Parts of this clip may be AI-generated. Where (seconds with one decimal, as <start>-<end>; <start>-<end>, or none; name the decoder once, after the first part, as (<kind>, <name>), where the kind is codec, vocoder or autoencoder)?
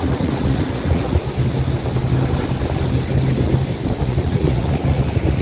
0.0-1.2 (vocoder, Vocos); 4.0-5.4